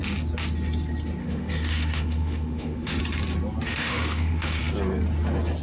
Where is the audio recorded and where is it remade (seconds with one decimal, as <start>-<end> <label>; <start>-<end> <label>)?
0.0-1.2 recorded; 1.2-3.0 remade; 3.0-3.7 recorded; 3.7-4.6 remade; 4.6-5.6 recorded